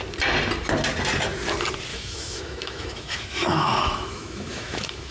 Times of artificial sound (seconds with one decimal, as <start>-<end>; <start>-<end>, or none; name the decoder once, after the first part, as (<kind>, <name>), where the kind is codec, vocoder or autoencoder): 1.9-5.1 (autoencoder, DAC-VAE)